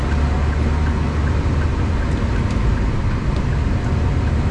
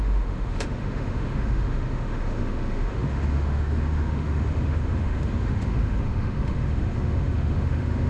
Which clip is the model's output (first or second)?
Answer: second